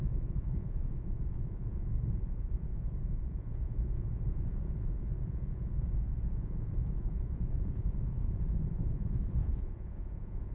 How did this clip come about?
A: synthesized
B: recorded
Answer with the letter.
A